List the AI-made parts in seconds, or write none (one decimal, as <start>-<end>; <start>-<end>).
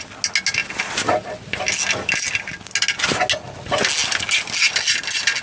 none